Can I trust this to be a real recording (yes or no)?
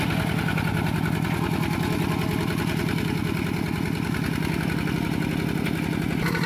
yes